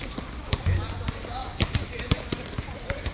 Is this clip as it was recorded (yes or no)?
yes